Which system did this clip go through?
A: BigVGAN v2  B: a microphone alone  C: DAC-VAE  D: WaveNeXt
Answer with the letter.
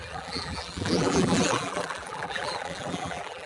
A